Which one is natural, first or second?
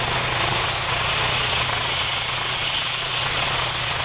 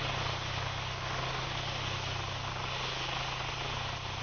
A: second